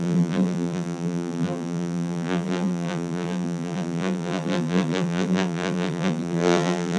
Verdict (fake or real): fake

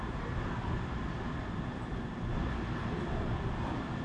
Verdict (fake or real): fake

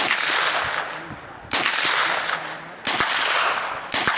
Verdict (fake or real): real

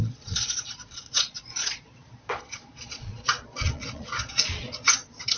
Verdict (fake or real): fake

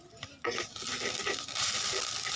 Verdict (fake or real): real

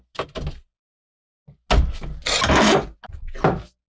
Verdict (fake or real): real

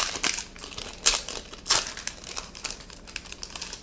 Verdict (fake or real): real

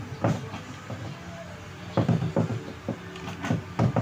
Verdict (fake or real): real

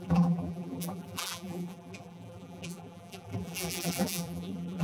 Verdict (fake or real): fake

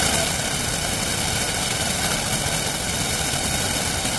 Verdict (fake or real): real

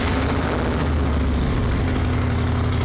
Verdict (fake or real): real